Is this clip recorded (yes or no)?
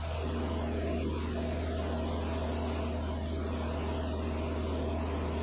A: yes